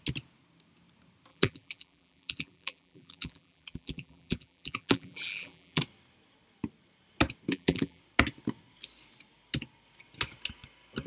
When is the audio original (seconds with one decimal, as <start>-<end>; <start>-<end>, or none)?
0.0-1.3; 5.8-7.5; 8.0-11.1